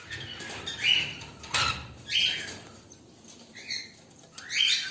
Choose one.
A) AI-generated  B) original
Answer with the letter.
B